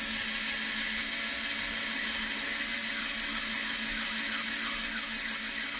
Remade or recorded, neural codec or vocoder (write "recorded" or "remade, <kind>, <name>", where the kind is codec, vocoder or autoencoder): recorded